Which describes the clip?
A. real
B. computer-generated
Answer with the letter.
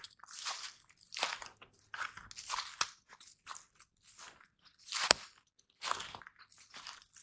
A